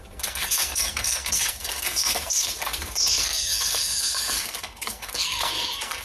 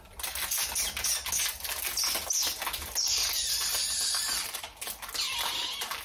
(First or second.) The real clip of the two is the second